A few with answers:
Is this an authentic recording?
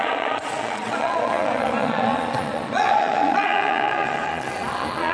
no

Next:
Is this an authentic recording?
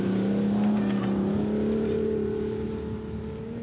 yes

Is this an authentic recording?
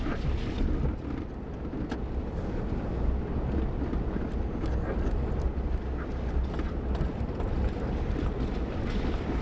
yes